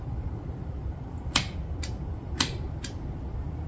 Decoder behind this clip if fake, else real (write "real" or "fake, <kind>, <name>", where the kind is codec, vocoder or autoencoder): real